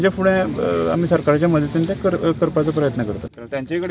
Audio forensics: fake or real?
real